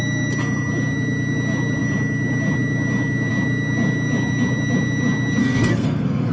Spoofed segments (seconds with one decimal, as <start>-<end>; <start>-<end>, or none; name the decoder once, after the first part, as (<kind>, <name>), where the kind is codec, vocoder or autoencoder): 5.4-6.3 (codec, SNAC)